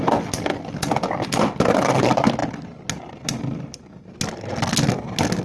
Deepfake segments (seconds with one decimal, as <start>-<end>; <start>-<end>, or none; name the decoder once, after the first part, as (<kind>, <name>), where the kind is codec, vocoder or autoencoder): none